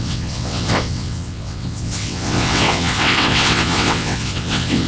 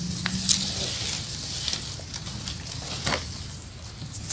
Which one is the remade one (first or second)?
first